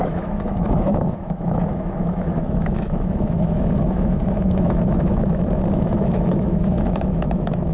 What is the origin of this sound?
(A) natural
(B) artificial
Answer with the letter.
B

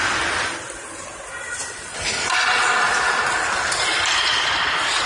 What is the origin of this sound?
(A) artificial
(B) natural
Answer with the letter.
B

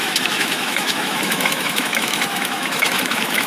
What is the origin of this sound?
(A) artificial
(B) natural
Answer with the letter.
A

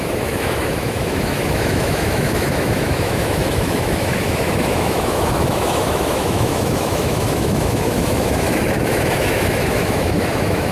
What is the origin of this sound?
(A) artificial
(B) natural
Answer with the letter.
A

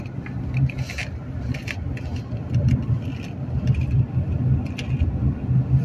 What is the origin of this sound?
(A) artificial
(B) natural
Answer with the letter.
B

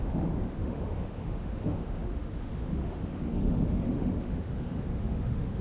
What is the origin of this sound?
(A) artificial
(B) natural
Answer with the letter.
A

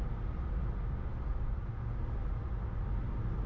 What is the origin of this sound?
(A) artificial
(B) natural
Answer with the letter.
B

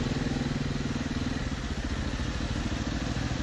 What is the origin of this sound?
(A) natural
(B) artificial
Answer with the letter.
A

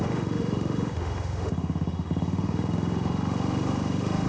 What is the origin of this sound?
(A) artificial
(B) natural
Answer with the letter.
A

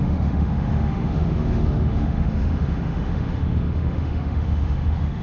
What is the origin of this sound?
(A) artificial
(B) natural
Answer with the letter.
A